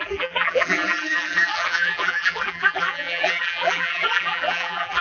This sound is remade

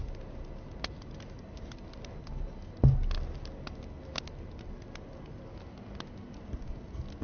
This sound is recorded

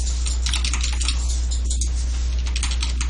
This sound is recorded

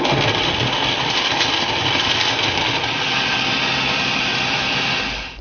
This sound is remade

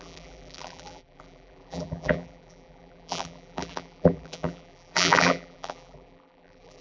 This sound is remade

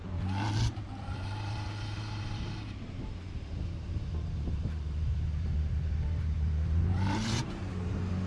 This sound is remade